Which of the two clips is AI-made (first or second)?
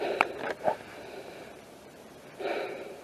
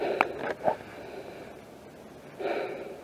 first